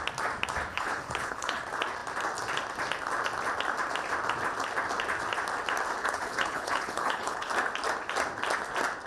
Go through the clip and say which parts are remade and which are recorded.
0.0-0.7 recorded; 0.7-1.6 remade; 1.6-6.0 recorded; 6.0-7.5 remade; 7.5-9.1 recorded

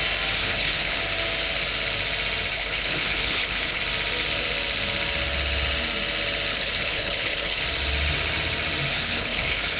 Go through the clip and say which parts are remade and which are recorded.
0.0-0.4 recorded; 0.4-1.0 remade; 1.0-2.5 recorded; 2.5-3.8 remade; 3.8-6.5 recorded; 6.5-7.6 remade; 7.6-8.9 recorded; 8.9-9.8 remade

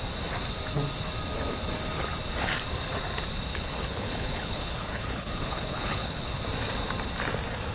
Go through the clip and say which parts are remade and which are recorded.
0.0-3.5 recorded; 3.5-6.4 remade; 6.4-7.7 recorded

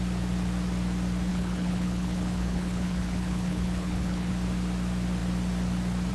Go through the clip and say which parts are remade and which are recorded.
0.0-1.3 recorded; 1.3-4.3 remade; 4.3-6.1 recorded

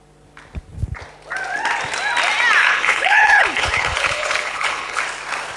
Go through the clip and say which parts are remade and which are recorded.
0.0-2.6 recorded; 2.6-5.0 remade; 5.0-5.6 recorded

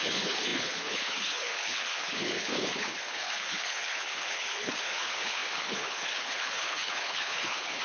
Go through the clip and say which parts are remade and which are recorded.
0.0-7.8 remade